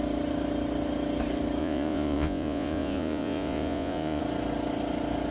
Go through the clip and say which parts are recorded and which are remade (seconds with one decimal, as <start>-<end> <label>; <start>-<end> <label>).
0.0-1.6 recorded; 1.6-4.2 remade; 4.2-5.3 recorded